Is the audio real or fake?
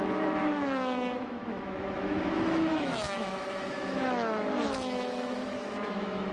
fake